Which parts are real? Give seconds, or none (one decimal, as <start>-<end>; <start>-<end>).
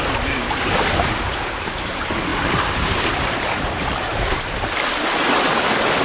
0.0-2.3; 4.4-6.0